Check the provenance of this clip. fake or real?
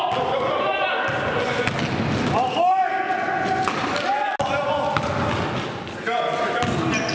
real